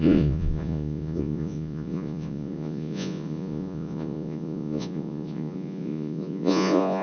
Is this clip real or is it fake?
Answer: fake